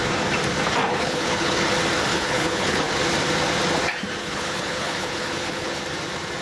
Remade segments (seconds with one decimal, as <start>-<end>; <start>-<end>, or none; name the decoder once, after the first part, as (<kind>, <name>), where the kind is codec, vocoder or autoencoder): 0.8-1.7 (codec, HILCodec); 2.1-2.9; 4.2-5.8